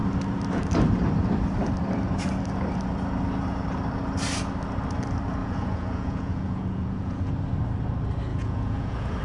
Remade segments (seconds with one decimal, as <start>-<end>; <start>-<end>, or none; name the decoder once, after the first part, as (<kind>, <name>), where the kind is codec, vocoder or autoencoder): 5.4-7.3 (vocoder, Vocos); 8.3-9.2